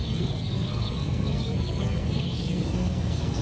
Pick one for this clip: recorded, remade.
remade